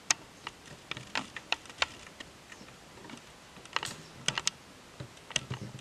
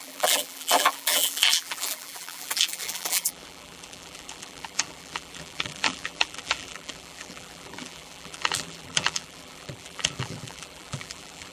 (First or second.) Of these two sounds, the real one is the first